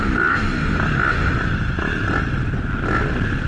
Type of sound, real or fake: real